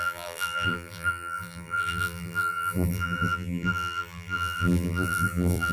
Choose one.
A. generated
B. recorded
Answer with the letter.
A